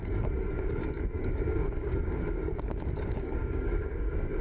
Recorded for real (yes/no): no